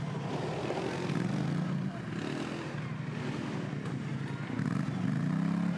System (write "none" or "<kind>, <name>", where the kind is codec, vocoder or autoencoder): none